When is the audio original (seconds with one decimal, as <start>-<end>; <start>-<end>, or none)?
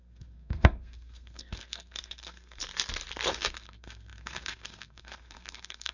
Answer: 2.6-3.3